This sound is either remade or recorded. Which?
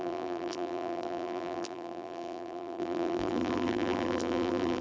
remade